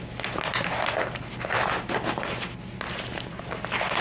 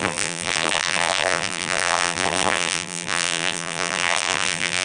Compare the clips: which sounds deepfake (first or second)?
second